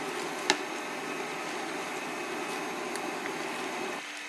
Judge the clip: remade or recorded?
recorded